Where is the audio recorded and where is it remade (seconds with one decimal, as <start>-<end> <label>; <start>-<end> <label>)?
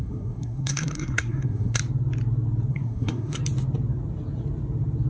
0.0-1.8 remade; 1.8-2.7 recorded; 2.7-3.4 remade; 3.4-5.1 recorded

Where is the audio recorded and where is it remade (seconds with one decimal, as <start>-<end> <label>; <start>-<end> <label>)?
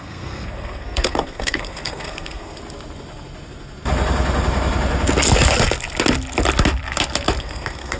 0.0-2.6 remade; 2.6-7.4 recorded; 7.4-8.0 remade